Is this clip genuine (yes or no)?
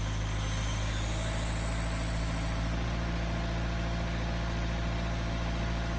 yes